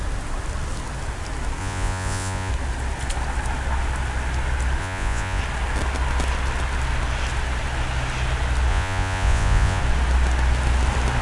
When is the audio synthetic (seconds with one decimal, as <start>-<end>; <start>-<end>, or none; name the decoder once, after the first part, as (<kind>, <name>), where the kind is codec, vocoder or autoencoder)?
1.6-2.5 (vocoder, Vocos); 4.8-5.4; 8.7-9.8